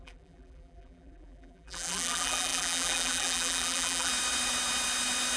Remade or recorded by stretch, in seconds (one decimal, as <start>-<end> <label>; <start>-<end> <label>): 0.0-4.1 remade; 4.1-5.4 recorded